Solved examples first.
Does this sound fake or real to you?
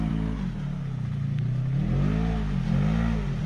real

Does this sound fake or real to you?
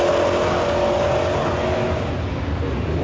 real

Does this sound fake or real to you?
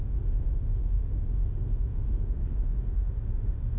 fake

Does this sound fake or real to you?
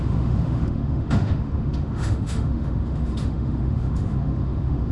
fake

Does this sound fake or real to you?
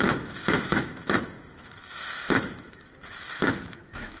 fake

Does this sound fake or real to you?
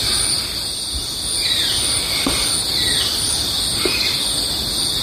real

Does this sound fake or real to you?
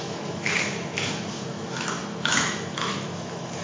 fake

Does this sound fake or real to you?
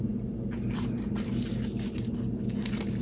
real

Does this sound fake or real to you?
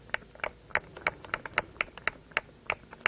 real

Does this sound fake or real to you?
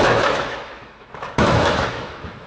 fake